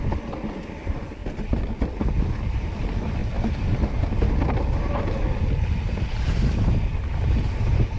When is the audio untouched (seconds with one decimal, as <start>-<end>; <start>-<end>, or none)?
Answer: 3.2-5.7